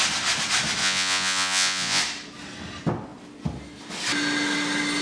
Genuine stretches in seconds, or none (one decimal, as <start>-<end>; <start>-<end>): 0.0-0.8; 2.0-5.0